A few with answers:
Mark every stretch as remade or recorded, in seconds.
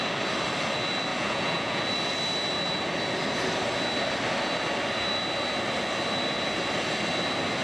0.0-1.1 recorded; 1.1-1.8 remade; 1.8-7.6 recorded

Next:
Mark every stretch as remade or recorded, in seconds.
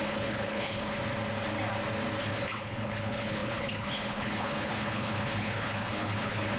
0.0-1.0 remade; 1.0-2.2 recorded; 2.2-6.6 remade